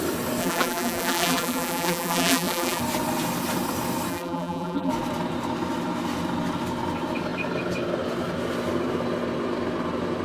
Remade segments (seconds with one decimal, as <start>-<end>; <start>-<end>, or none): 0.4-2.8; 4.1-4.9